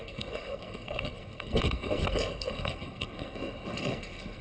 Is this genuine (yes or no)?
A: no